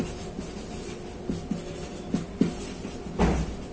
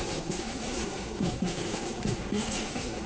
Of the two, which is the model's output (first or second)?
second